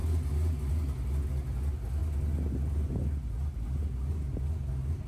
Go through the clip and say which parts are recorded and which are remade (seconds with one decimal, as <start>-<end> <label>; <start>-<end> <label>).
0.0-5.1 recorded